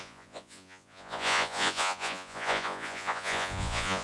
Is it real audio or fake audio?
fake